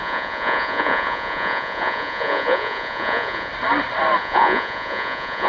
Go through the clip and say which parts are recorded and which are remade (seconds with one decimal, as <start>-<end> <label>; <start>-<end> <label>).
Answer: 0.0-3.5 remade; 3.5-4.2 recorded; 4.2-5.5 remade